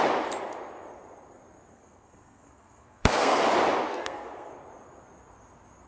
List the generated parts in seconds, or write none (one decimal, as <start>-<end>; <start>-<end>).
1.7-3.4; 3.9-4.5